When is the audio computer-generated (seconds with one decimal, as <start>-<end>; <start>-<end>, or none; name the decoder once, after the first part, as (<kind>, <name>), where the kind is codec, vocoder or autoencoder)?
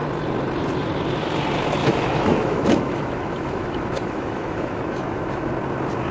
1.8-5.5 (autoencoder, DAC-VAE)